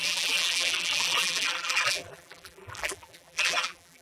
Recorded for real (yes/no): no